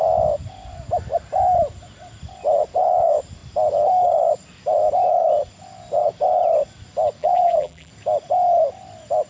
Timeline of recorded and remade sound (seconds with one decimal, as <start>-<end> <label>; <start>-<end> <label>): 0.0-7.2 recorded; 7.2-7.9 remade; 7.9-9.3 recorded